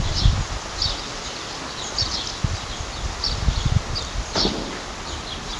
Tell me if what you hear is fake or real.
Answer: real